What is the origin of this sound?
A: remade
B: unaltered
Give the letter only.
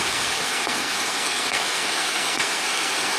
A